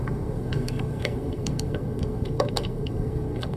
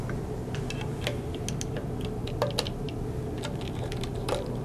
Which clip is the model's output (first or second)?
first